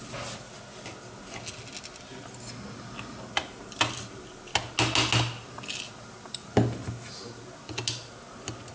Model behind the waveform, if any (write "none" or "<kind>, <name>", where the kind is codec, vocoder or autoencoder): none